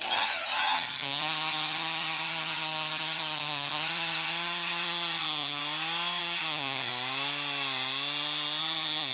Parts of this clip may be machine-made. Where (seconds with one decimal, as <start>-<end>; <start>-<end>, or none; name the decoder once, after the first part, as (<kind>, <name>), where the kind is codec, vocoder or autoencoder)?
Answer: 0.0-5.6 (vocoder, HiFi-GAN); 6.2-6.9; 8.6-9.1